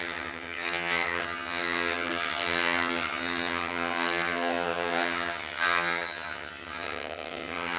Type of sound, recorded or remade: remade